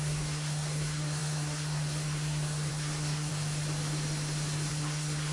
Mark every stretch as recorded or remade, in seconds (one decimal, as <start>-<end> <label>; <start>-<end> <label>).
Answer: 0.0-3.3 remade; 3.3-4.7 recorded; 4.7-5.3 remade